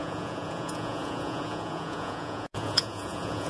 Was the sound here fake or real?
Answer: fake